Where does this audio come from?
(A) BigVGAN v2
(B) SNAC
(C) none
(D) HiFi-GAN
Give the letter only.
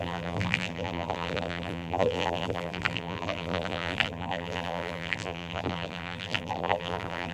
A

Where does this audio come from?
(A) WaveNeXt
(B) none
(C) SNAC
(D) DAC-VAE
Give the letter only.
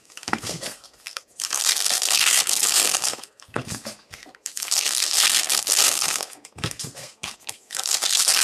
C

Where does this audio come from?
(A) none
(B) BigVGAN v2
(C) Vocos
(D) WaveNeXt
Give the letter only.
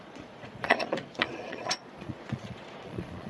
C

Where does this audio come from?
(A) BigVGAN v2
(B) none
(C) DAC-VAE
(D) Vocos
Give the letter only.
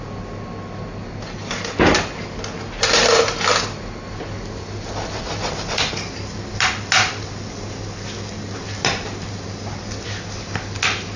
B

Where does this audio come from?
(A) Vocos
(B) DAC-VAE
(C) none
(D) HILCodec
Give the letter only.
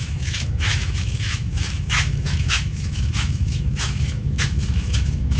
B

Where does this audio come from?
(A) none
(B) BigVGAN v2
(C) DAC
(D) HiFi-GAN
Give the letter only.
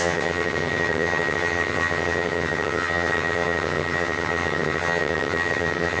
D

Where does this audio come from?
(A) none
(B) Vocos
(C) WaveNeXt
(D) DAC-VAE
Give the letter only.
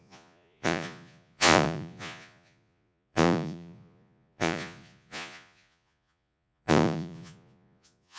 B